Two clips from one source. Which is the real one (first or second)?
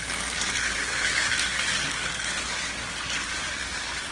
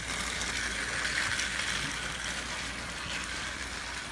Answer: second